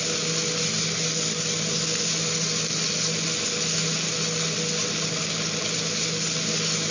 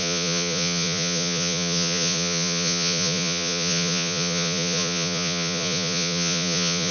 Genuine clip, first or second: first